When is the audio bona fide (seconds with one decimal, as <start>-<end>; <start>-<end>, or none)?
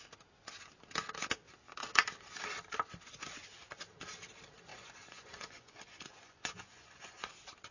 0.0-4.7; 7.3-7.7